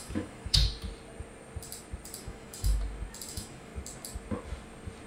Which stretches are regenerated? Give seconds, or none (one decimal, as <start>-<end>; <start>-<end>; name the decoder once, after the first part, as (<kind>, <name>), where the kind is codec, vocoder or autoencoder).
0.0-0.6 (autoencoder, DAC-VAE); 2.2-2.7; 3.3-3.7